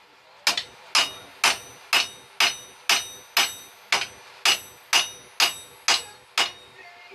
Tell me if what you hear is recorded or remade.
recorded